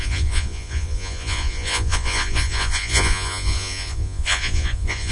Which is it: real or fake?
fake